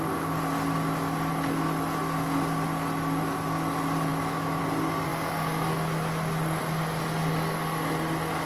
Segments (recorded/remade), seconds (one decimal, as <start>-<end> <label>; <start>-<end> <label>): 0.0-4.1 recorded; 4.1-4.6 remade; 4.6-8.5 recorded